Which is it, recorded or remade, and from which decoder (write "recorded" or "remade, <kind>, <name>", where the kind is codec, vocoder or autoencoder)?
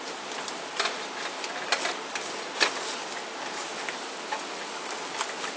recorded